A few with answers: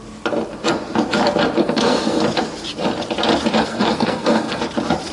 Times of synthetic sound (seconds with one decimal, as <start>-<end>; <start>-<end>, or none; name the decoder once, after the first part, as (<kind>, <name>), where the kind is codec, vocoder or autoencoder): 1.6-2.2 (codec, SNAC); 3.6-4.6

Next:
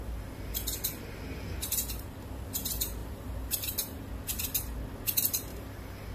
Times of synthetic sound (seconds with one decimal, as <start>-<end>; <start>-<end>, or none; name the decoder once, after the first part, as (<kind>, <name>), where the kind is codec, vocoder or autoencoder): 3.0-4.1 (vocoder, BigVGAN v2); 5.5-6.1

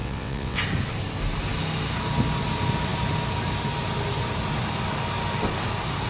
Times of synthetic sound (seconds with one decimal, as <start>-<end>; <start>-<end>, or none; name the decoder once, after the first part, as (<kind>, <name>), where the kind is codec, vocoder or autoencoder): 0.0-0.6 (vocoder, WaveNeXt)

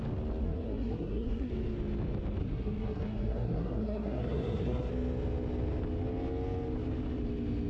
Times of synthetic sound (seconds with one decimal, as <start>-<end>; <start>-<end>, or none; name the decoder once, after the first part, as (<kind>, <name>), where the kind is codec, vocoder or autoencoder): 0.4-1.5 (codec, SNAC); 2.4-4.9